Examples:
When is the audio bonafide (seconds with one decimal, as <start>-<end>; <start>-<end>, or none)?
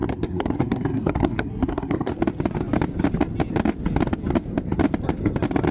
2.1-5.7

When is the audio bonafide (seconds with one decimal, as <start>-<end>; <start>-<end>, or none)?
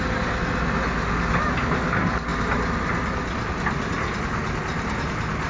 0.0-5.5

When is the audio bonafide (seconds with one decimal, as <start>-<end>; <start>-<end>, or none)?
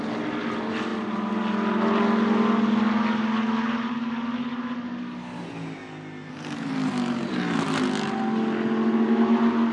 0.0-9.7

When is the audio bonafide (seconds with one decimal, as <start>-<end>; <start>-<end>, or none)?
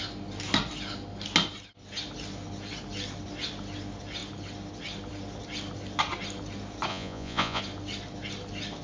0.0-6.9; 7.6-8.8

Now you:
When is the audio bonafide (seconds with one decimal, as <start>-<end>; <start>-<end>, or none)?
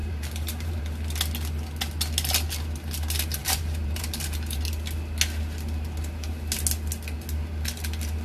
0.8-3.4; 4.6-8.2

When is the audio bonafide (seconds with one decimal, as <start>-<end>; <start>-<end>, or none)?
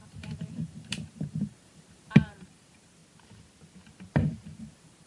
3.0-4.6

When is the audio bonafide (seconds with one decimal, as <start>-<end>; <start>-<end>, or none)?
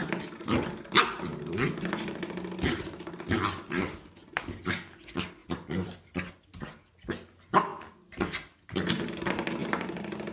0.0-5.4; 6.3-10.3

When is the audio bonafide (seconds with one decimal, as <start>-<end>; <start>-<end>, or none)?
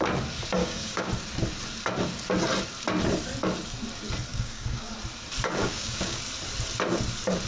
0.0-0.6; 1.1-4.3; 4.9-5.6; 6.2-7.5